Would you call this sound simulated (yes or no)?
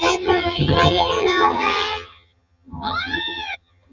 yes